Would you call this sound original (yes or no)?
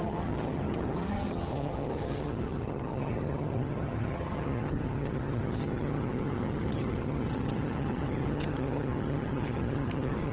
no